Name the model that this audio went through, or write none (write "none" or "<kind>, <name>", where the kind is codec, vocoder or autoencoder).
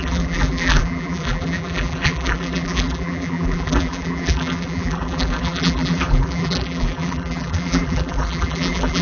vocoder, BigVGAN v2